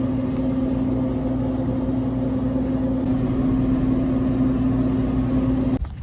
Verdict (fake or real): real